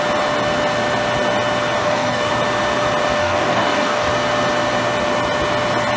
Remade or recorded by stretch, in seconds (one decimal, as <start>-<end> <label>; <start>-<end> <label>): 0.0-1.8 recorded; 1.8-2.3 remade; 2.3-3.2 recorded; 3.2-4.1 remade; 4.1-6.0 recorded